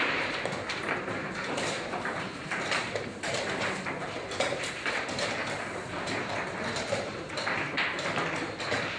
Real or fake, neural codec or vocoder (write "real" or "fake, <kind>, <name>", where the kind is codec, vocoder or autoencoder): fake, vocoder, BigVGAN v2